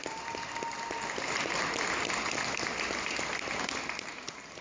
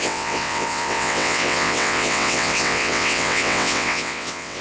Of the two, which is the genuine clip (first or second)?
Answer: first